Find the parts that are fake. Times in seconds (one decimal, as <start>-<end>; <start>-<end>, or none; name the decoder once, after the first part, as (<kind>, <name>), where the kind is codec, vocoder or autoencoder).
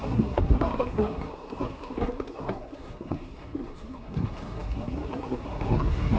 0.0-6.2 (codec, SNAC)